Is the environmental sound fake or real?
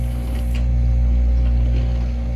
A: real